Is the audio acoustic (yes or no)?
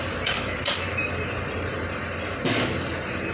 yes